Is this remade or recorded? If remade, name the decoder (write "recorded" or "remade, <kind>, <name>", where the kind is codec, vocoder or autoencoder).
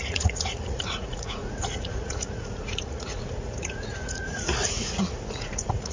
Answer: remade, vocoder, Vocos